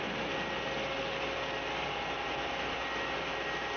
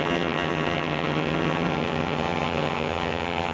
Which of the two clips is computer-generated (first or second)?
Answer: second